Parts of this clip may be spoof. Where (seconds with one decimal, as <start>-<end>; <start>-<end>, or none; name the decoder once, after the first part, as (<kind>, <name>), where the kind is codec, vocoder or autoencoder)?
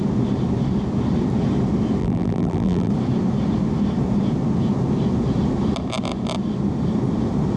2.0-2.9 (vocoder, BigVGAN v2)